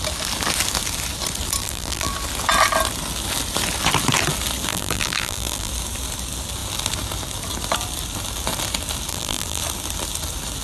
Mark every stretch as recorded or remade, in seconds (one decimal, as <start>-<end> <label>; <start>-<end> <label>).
0.0-1.6 recorded; 1.6-2.1 remade; 2.1-4.7 recorded; 4.7-5.7 remade; 5.7-9.1 recorded; 9.1-9.6 remade; 9.6-10.6 recorded